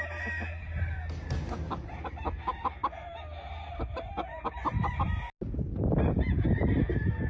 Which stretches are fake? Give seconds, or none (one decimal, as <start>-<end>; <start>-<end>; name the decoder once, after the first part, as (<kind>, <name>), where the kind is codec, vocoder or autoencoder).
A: none